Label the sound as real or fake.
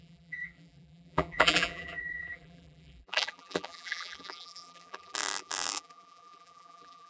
fake